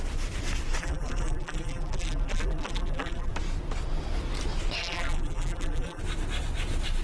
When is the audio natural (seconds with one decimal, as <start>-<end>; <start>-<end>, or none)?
0.0-0.8; 3.3-4.8; 6.0-7.0